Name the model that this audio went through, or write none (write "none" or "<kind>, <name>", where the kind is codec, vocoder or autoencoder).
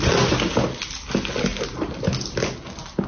none